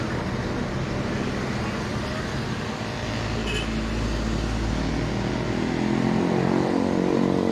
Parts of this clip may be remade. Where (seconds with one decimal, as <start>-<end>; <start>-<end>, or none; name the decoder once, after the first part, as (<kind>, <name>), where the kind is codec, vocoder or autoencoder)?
none